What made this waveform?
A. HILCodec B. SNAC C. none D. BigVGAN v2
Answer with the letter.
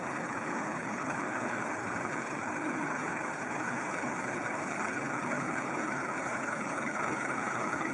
A